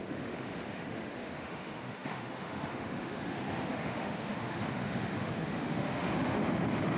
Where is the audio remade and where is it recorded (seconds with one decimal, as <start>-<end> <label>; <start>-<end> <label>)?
0.0-7.0 remade